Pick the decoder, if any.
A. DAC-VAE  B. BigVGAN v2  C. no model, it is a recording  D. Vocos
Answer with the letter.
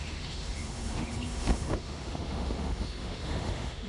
A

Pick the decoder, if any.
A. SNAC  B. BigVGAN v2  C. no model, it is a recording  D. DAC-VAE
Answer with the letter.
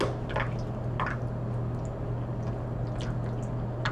C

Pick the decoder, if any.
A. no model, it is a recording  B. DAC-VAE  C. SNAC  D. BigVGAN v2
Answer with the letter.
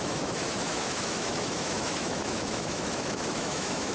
B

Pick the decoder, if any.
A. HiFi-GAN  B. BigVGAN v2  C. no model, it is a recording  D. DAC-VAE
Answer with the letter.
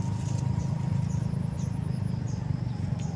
C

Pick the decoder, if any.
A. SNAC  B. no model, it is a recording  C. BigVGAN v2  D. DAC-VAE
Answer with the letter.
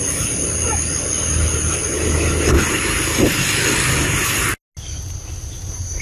B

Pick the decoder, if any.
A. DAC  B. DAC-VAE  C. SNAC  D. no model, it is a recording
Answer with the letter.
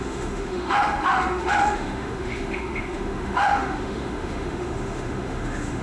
B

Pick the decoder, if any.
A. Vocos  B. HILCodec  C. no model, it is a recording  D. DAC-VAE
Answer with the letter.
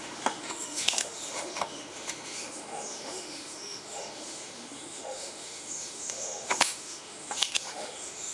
D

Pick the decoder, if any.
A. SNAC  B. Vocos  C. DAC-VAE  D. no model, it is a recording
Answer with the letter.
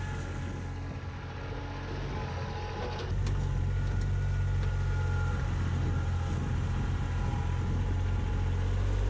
D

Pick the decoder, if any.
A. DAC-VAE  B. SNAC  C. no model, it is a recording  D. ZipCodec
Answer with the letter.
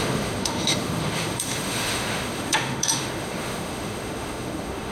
A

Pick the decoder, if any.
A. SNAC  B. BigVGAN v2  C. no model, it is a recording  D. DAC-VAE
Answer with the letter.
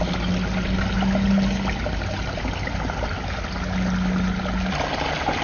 C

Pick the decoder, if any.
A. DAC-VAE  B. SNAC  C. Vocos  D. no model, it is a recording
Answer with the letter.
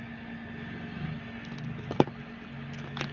D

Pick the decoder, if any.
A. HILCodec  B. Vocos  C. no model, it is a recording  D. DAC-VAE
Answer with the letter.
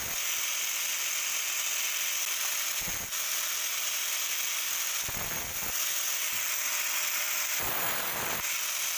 C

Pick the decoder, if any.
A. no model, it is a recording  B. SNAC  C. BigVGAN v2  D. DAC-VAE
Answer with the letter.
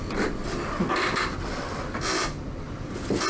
A